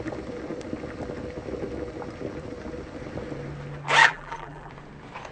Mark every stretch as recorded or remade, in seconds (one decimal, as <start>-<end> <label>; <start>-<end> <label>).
0.0-4.0 recorded; 4.0-4.7 remade; 4.7-5.3 recorded